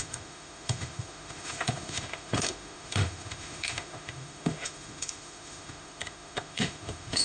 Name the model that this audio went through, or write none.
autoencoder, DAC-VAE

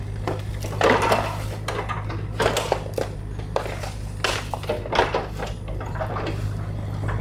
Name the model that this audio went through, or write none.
none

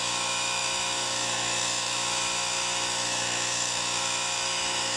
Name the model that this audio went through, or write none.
autoencoder, DAC-VAE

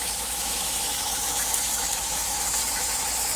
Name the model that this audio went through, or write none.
autoencoder, DAC-VAE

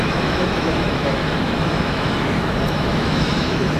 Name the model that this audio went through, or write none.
autoencoder, DAC-VAE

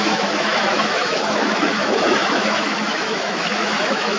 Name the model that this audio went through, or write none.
autoencoder, DAC-VAE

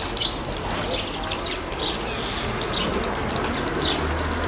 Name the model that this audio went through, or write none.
none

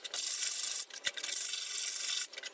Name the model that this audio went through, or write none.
none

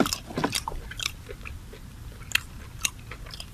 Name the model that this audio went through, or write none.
none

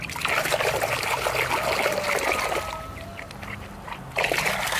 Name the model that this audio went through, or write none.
none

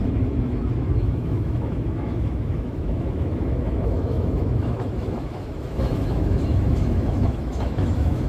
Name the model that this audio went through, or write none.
autoencoder, DAC-VAE